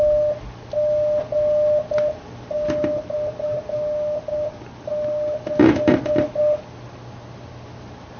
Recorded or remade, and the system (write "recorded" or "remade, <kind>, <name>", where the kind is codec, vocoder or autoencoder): recorded